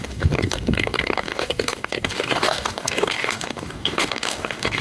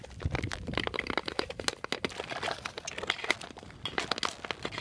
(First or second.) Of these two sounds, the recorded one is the second